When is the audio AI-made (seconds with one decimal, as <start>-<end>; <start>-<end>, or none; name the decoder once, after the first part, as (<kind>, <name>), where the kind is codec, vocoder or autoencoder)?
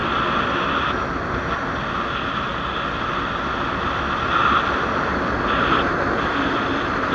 none